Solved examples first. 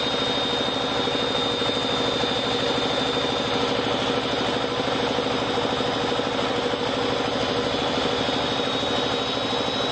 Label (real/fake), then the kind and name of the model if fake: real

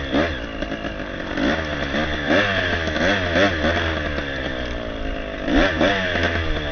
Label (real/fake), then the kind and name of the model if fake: real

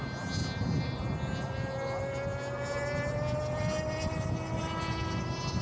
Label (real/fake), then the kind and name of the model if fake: real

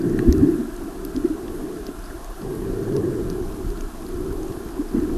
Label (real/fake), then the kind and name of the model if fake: real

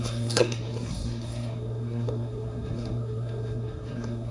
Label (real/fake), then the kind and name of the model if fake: fake, codec, SNAC